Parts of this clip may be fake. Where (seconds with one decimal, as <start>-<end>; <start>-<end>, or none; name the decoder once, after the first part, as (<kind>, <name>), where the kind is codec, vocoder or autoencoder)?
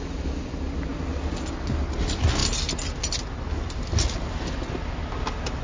none